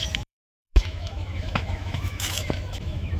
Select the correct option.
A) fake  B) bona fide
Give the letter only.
A